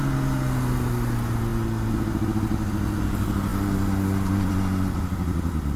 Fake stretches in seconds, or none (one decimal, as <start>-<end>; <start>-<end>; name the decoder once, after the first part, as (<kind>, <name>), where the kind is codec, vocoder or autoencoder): none